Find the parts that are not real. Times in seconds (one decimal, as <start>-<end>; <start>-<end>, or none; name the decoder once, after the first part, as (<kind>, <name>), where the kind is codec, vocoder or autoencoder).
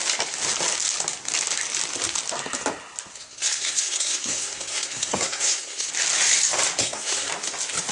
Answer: 3.1-5.9 (codec, SNAC); 6.8-7.3